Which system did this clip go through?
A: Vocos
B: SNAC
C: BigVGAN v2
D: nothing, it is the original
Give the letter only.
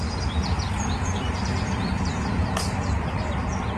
C